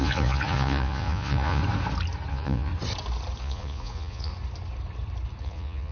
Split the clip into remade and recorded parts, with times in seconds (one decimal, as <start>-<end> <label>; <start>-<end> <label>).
0.0-1.6 remade; 1.6-2.3 recorded; 2.3-2.7 remade; 2.7-3.4 recorded; 3.4-4.3 remade; 4.3-5.4 recorded; 5.4-5.9 remade